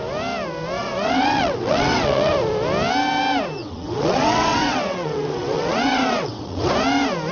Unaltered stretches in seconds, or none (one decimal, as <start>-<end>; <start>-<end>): 0.0-0.8; 2.3-3.6; 6.7-7.3